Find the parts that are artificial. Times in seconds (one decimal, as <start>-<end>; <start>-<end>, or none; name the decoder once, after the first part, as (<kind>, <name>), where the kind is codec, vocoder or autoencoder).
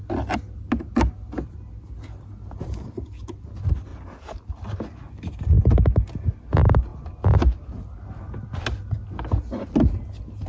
none